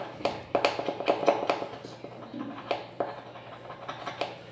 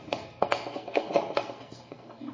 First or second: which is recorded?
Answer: first